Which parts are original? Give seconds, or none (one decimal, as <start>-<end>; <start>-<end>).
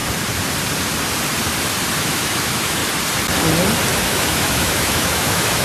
0.0-2.0; 2.8-3.9